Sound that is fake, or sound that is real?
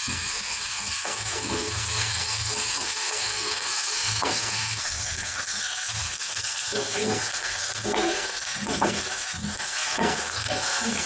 fake